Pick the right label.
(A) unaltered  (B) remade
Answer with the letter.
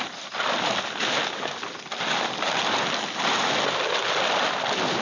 A